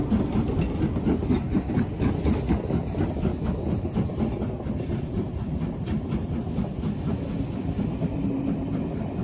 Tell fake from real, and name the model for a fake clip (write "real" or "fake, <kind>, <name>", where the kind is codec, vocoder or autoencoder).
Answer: real